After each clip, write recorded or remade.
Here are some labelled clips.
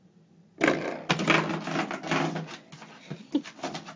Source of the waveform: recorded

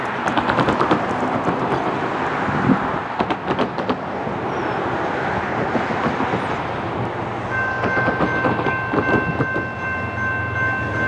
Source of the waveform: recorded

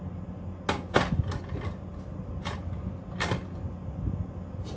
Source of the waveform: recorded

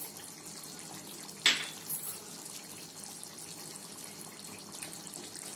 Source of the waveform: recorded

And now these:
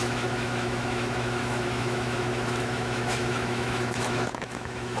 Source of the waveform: remade